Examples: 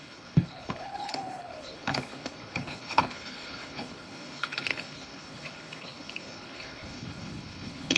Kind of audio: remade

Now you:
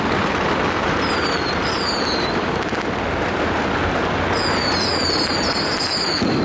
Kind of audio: recorded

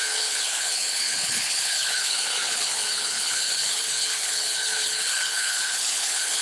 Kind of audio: remade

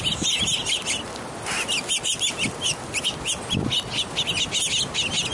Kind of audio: recorded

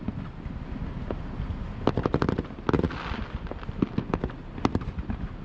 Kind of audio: recorded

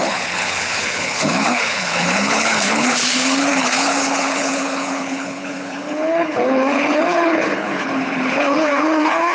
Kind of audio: remade